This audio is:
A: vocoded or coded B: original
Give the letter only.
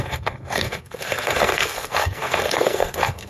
A